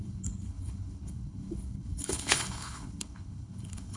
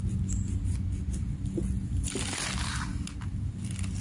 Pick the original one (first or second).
second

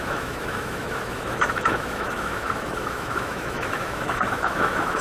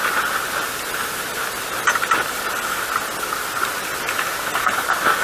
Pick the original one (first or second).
second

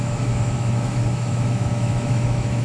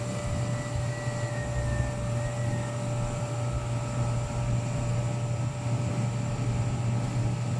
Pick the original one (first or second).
second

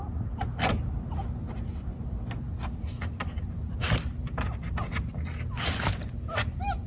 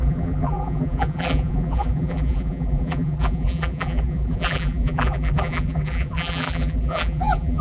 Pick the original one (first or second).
first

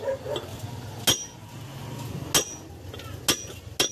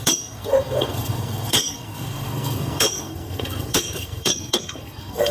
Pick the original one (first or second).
first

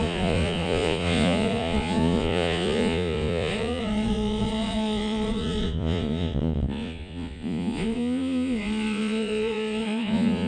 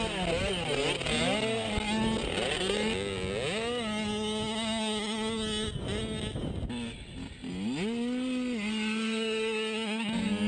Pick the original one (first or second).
second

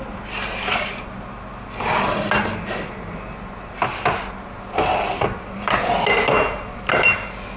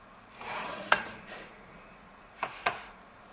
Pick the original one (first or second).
first